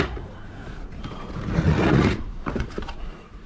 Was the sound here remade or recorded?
remade